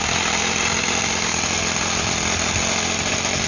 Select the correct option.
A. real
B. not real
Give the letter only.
A